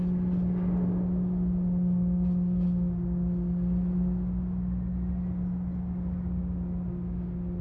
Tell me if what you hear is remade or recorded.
recorded